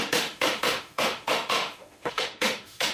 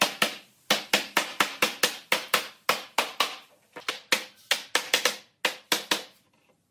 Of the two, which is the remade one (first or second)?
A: first